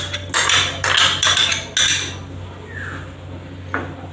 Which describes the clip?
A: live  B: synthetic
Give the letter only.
A